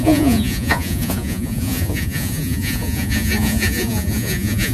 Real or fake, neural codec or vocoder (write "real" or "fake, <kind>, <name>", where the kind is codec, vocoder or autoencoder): fake, vocoder, Vocos